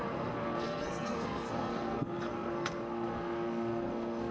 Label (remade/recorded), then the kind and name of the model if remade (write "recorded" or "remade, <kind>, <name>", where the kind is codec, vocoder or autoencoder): remade, codec, SNAC